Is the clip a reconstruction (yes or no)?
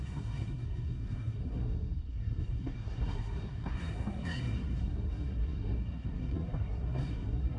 yes